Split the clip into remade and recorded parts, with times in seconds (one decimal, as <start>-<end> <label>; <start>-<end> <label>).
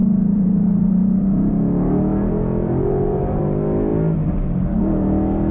0.0-1.5 remade; 1.5-2.6 recorded; 2.6-3.4 remade; 3.4-5.5 recorded